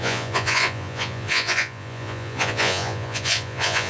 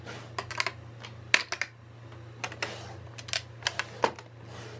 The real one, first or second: second